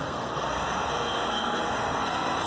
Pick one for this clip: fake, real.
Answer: fake